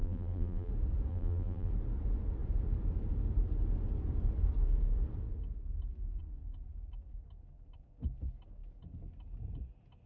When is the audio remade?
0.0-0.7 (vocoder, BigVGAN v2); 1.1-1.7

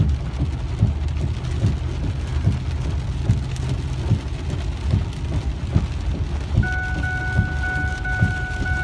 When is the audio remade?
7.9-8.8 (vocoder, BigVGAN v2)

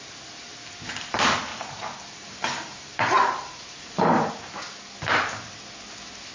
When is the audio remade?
1.5-4.3 (vocoder, BigVGAN v2)

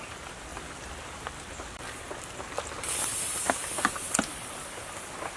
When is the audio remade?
none

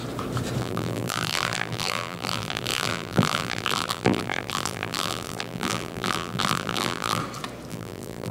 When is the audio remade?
0.6-7.2 (vocoder, BigVGAN v2); 7.7-8.3